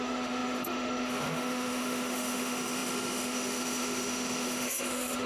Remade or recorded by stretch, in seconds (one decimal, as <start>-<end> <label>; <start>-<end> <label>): 0.0-5.3 remade